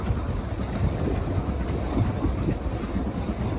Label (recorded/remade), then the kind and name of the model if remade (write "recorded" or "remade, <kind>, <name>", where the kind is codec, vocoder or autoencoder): recorded